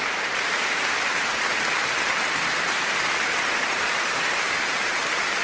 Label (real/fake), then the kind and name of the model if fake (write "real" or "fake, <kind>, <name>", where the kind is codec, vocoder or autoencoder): fake, vocoder, BigVGAN v2